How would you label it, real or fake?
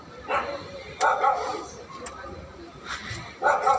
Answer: real